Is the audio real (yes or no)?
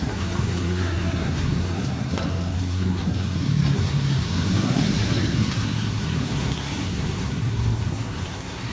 no